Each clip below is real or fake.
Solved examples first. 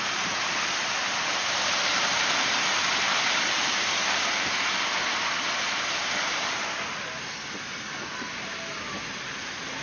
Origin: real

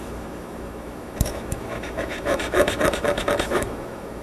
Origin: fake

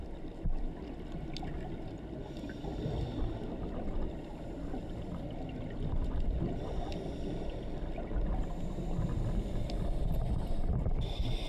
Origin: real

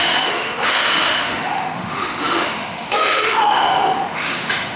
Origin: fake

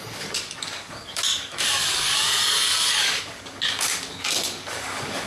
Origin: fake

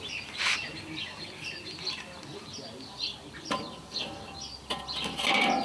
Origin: real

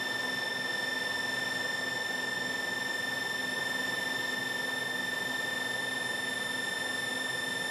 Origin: real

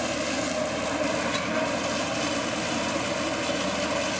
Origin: real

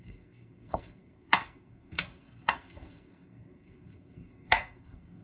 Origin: fake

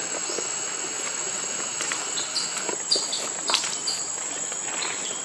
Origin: real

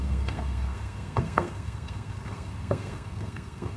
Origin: fake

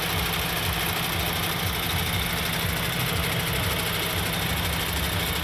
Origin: real